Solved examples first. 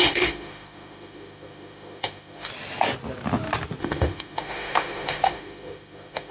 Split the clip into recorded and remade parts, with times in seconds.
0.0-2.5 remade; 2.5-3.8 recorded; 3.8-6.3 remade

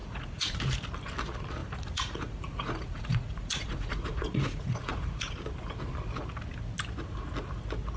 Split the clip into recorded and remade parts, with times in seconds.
0.0-0.6 remade; 0.6-1.6 recorded; 1.6-5.3 remade; 5.3-8.0 recorded